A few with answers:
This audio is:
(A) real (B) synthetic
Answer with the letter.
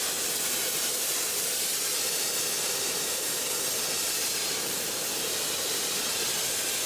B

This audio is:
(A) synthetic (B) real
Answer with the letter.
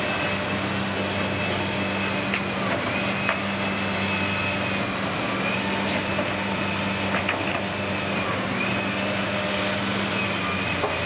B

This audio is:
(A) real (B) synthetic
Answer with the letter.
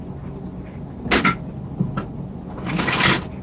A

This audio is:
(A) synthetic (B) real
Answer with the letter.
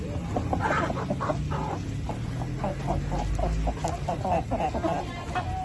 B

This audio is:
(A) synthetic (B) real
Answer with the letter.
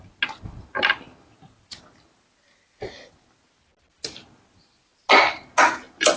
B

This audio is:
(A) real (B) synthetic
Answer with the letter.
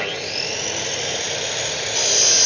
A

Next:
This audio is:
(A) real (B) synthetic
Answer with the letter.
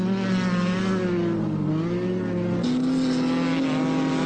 A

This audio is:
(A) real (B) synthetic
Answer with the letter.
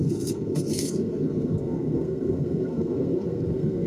B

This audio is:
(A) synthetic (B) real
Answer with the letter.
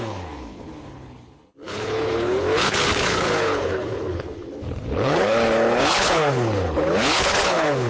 A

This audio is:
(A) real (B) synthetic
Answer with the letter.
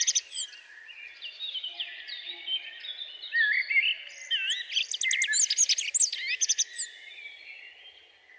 A